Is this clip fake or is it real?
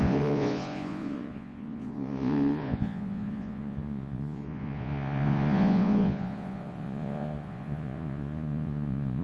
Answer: fake